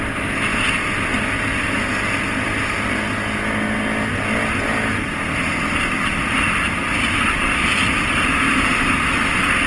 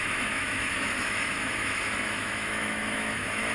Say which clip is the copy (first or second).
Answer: second